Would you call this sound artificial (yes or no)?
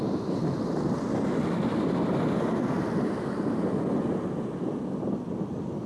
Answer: no